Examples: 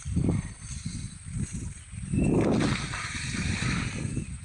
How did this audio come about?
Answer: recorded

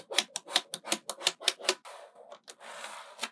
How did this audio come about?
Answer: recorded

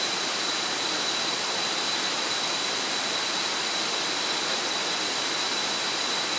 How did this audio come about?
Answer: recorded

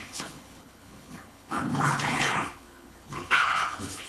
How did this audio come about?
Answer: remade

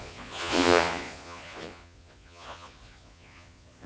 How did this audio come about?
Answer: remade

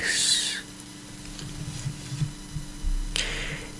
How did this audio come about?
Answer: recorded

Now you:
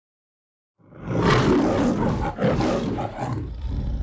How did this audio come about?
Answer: recorded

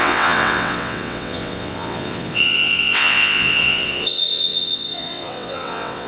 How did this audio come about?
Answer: remade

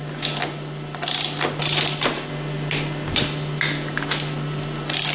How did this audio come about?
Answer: recorded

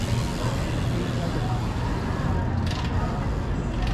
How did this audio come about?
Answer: recorded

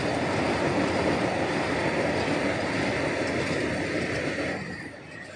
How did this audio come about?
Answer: recorded